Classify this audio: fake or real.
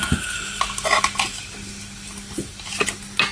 real